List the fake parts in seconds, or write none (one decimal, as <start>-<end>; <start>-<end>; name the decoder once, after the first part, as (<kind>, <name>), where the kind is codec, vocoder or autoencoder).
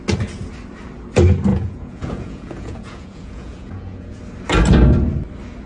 1.5-4.2 (vocoder, Vocos)